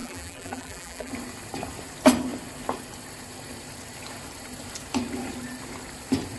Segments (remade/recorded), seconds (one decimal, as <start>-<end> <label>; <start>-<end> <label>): 0.0-1.1 remade; 1.1-6.4 recorded